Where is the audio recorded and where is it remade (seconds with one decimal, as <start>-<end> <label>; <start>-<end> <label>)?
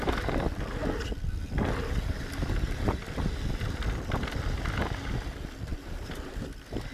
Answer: 0.0-5.7 recorded; 5.7-6.3 remade; 6.3-6.9 recorded